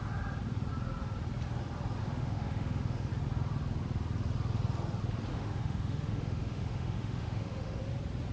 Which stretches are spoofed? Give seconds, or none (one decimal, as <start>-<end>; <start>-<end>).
2.0-3.1; 5.3-7.8